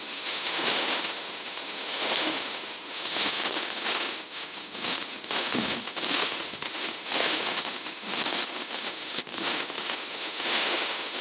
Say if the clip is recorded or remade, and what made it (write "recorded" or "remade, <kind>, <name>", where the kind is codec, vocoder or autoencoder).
remade, autoencoder, DAC-VAE